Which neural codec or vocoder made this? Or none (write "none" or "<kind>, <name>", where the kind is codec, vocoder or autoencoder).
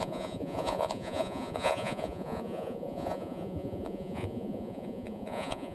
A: vocoder, Vocos